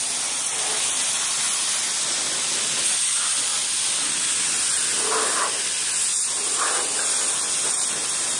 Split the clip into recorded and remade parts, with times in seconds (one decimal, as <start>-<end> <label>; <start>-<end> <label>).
0.0-8.4 recorded